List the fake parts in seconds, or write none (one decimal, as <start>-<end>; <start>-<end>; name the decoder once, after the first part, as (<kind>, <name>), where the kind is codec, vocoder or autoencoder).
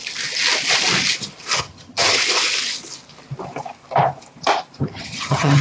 1.6-2.2 (vocoder, HiFi-GAN); 4.8-5.6